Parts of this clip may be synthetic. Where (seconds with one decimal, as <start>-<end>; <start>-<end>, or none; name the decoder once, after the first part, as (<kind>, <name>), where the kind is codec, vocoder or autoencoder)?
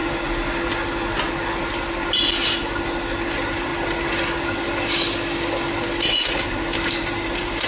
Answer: 3.3-3.7 (vocoder, BigVGAN v2); 6.0-7.7